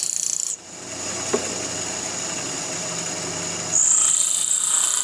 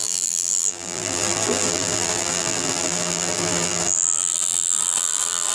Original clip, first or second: first